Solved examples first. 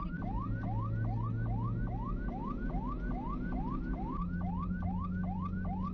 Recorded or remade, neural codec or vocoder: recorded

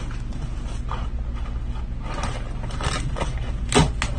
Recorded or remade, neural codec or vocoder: recorded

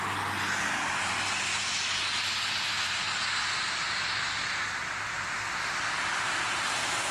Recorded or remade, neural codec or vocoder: recorded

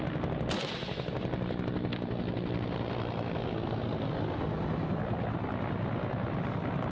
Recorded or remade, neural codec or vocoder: recorded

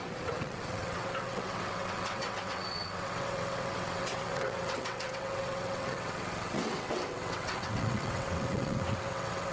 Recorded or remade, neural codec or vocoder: remade, vocoder, WaveNeXt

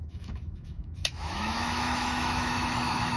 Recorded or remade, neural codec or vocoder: remade, autoencoder, DAC-VAE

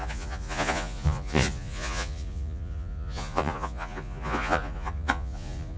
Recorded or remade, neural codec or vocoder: remade, vocoder, Vocos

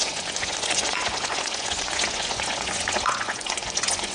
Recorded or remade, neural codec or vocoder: remade, vocoder, Vocos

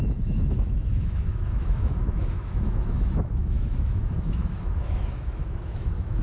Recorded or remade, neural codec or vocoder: remade, autoencoder, DAC-VAE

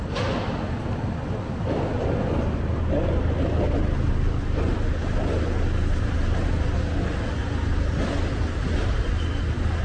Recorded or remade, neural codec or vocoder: recorded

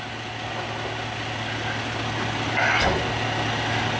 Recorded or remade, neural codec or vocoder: recorded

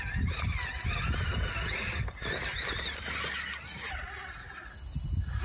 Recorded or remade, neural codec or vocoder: recorded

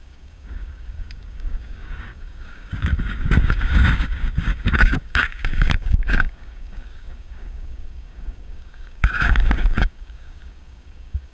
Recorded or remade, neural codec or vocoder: remade, codec, DAC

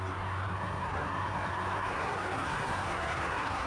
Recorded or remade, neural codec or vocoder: remade, codec, SNAC